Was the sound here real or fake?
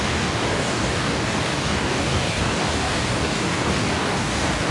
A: fake